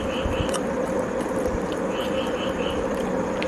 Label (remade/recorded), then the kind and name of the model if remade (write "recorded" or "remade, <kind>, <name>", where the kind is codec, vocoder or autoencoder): recorded